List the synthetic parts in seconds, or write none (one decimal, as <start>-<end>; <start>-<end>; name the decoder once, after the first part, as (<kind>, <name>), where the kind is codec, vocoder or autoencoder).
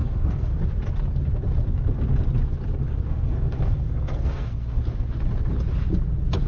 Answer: 0.0-0.6 (codec, SNAC); 2.9-4.8